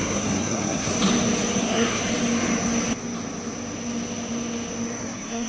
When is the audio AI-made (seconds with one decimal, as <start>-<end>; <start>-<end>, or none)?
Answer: 0.0-0.9; 1.6-2.0; 5.0-5.5

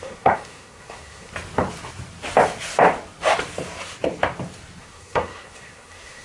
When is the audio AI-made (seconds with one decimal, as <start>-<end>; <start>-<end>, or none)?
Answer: 0.0-1.3; 4.8-6.2

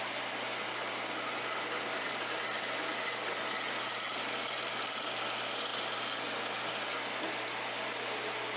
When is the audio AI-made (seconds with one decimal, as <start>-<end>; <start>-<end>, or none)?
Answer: none

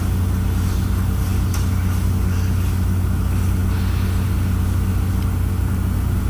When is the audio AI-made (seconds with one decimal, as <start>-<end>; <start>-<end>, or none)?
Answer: none

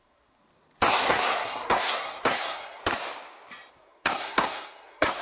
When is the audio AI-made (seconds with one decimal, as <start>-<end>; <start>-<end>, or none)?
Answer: 0.0-0.4; 0.9-2.8; 3.7-5.2

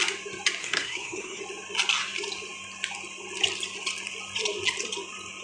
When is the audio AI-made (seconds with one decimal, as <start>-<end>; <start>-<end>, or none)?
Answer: 0.6-1.4

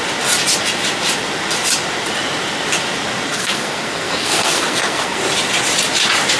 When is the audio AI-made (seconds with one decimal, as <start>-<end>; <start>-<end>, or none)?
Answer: 3.3-5.2